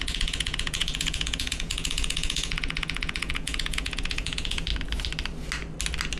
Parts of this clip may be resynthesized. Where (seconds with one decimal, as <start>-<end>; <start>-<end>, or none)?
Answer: 0.0-4.7